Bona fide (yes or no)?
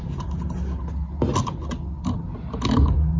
yes